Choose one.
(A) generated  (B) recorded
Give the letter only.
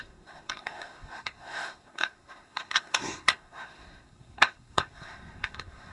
A